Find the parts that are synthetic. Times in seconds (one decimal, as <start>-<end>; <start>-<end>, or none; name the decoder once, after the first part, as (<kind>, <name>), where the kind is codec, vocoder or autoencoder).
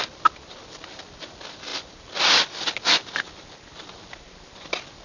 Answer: none